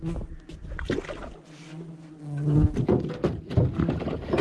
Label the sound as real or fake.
real